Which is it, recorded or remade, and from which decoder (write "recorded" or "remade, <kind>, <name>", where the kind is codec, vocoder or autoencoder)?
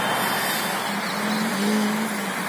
recorded